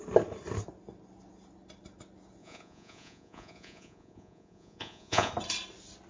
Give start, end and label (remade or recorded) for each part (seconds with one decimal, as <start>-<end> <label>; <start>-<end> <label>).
0.0-2.4 recorded; 2.4-5.3 remade; 5.3-6.1 recorded